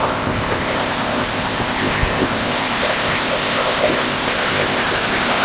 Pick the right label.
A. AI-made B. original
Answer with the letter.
A